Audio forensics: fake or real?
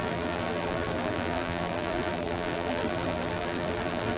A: fake